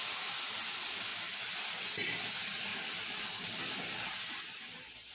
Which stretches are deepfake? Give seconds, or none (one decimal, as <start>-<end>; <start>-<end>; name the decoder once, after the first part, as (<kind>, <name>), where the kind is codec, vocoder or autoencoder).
none